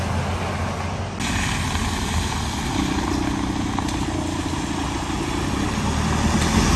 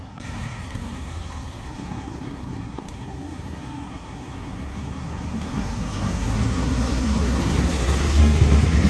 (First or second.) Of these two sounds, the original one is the first